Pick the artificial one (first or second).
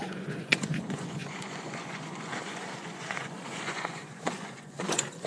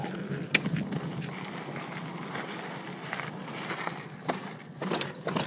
first